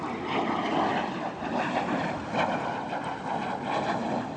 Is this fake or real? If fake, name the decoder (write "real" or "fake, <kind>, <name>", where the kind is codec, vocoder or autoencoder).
real